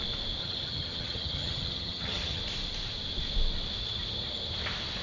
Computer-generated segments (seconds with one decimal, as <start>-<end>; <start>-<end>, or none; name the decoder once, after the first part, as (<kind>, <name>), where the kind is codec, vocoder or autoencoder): 0.4-2.4 (vocoder, HiFi-GAN)